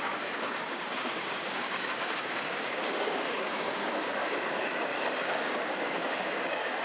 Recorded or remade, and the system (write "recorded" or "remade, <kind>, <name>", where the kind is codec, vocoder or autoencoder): remade, codec, DAC